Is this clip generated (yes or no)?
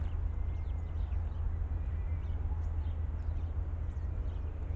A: no